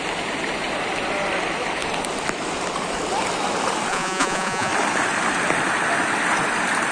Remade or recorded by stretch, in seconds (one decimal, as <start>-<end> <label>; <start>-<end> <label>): 0.0-3.9 recorded; 3.9-4.7 remade; 4.7-6.9 recorded